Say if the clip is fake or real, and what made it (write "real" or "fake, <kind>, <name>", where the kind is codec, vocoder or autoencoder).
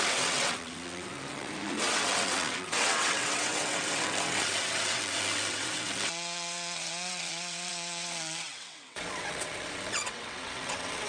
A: fake, vocoder, WaveNeXt